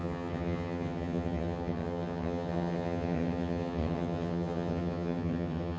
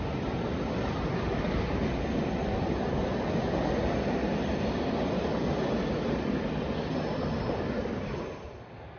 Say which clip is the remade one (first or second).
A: first